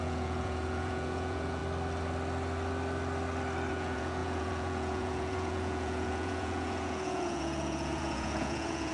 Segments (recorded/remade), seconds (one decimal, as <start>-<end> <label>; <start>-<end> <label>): 0.0-1.6 remade; 1.6-3.7 recorded; 3.7-8.9 remade